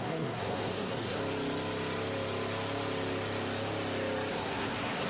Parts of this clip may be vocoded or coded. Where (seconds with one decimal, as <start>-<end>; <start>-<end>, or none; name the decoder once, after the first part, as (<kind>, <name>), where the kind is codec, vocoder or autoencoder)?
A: 0.0-1.2 (codec, SNAC); 4.3-5.1